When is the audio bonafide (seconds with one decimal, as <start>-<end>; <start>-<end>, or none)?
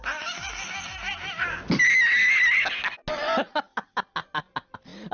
0.0-5.1